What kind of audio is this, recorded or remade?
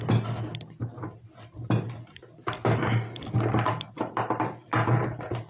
recorded